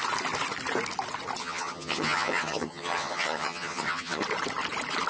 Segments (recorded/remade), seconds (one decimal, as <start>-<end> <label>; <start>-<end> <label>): 0.0-1.4 recorded; 1.4-4.2 remade; 4.2-5.1 recorded